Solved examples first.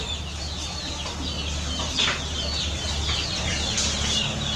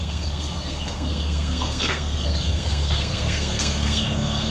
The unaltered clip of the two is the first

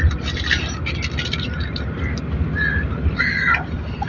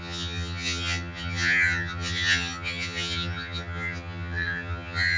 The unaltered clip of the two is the first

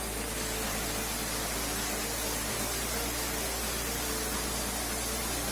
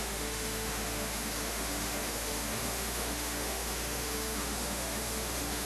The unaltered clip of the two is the first